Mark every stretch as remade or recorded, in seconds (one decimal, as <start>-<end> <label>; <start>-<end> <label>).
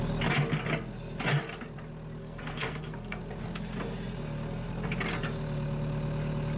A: 0.0-2.2 recorded; 2.2-3.2 remade; 3.2-6.6 recorded